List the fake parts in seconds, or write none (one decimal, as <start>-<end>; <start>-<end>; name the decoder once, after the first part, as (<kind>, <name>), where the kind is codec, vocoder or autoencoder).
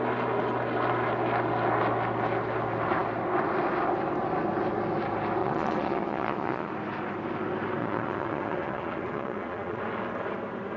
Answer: 5.4-6.7 (vocoder, Vocos); 7.8-9.8